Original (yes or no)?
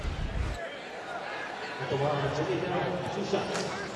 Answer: yes